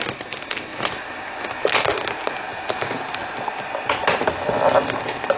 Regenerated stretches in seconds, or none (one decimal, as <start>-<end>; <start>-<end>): none